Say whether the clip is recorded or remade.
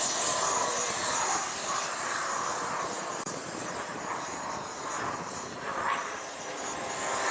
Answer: recorded